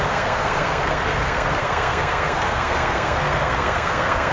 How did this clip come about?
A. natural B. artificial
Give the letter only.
B